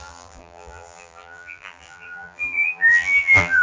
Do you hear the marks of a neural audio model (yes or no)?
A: yes